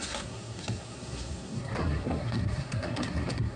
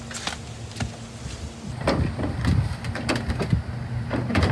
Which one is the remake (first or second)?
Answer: first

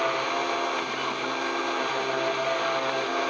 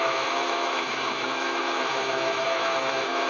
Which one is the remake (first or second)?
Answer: second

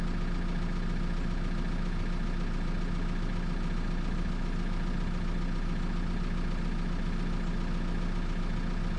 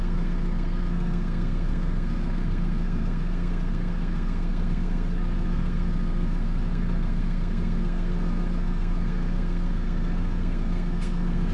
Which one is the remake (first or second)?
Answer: second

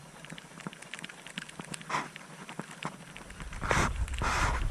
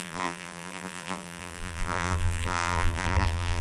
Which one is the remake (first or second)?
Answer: second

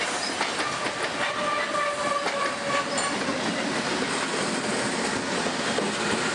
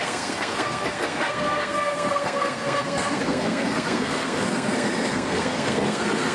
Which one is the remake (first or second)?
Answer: second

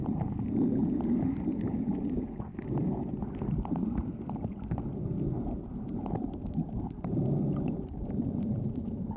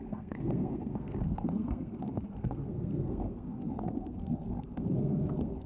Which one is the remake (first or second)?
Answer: second